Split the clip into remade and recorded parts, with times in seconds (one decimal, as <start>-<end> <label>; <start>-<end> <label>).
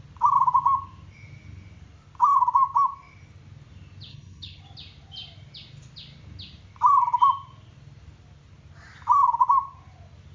0.0-4.1 recorded; 4.1-4.6 remade; 4.6-10.3 recorded